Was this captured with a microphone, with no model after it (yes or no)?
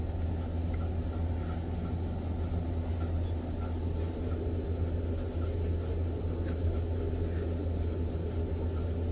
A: yes